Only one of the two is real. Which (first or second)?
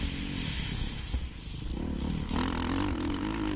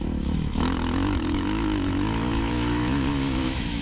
first